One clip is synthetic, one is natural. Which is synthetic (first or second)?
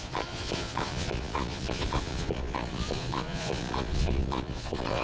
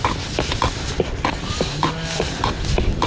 first